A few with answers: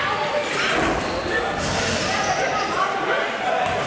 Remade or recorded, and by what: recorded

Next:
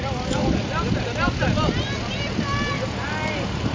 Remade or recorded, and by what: recorded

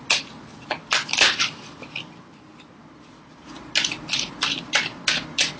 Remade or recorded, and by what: recorded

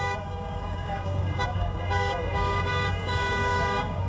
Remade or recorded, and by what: remade, codec, DAC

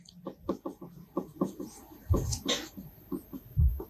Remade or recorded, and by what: recorded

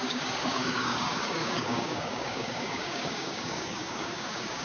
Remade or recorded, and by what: remade, codec, DAC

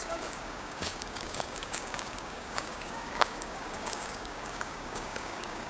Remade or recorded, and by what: remade, codec, DAC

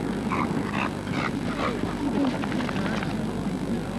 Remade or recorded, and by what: recorded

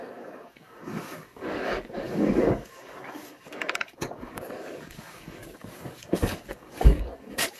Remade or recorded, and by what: remade, codec, DAC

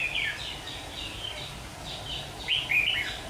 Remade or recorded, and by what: recorded